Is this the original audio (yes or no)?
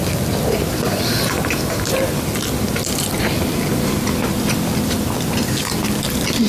yes